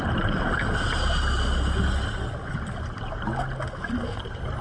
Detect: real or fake real